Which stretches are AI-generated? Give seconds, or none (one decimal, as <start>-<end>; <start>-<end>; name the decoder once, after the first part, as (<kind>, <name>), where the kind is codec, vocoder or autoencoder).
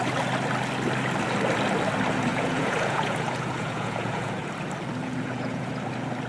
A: 2.3-4.5 (vocoder, Vocos); 5.0-5.7